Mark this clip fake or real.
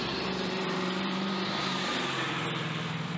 fake